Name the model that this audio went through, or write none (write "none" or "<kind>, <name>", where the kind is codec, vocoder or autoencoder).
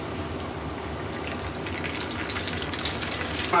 none